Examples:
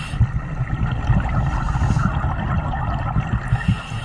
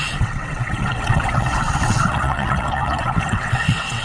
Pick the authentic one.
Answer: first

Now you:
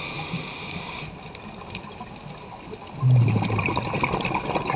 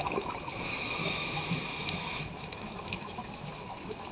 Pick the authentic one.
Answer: first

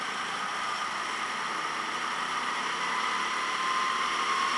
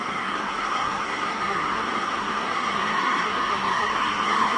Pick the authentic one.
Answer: first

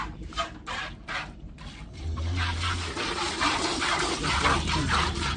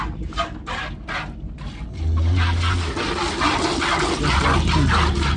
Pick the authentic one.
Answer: second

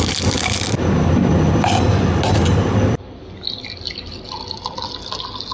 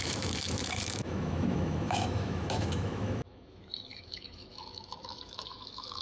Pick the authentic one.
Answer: first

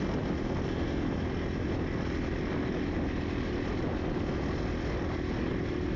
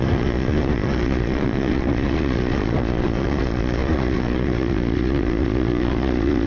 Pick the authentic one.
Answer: first